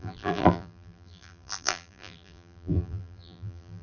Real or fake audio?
fake